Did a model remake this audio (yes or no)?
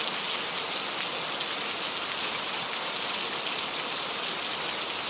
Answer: no